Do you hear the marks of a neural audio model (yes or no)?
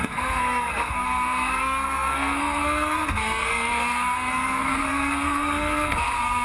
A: yes